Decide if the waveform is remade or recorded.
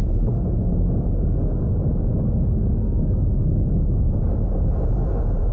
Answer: recorded